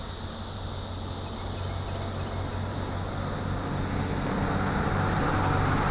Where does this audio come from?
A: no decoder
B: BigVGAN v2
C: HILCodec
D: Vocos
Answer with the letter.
A